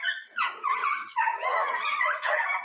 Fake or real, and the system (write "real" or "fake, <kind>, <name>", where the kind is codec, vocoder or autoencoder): fake, vocoder, Vocos